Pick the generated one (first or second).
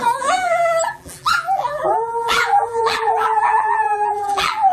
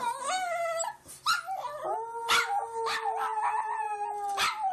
first